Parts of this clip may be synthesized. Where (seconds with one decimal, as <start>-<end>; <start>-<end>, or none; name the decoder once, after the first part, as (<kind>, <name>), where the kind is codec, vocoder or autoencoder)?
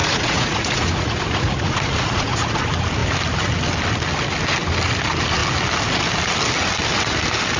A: 0.0-2.6 (vocoder, Vocos)